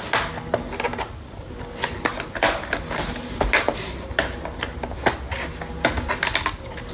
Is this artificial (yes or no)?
no